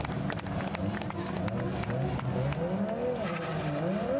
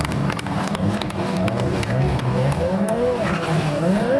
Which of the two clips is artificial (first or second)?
second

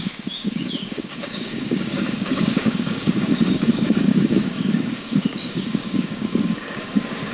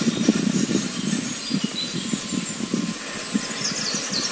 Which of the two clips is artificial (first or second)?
first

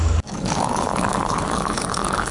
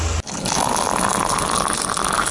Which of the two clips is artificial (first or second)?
first